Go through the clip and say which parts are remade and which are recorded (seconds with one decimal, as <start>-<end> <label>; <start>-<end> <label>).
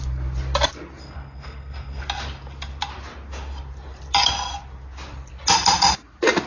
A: 0.0-1.0 recorded; 1.0-2.0 remade; 2.0-6.5 recorded